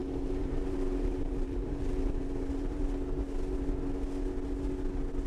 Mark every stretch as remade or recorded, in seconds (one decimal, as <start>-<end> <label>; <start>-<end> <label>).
0.0-2.8 remade; 2.8-5.3 recorded